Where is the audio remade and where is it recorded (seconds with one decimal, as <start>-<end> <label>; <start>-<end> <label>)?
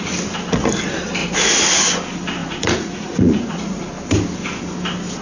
0.0-1.2 recorded; 1.2-1.8 remade; 1.8-2.4 recorded; 2.4-3.9 remade; 3.9-5.2 recorded